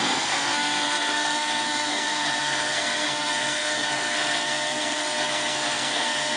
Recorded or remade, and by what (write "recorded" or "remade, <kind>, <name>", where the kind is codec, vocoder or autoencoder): remade, codec, SNAC